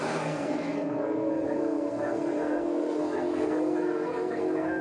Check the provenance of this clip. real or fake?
fake